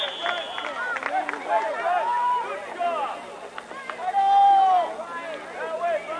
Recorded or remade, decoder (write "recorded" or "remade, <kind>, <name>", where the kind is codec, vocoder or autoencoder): recorded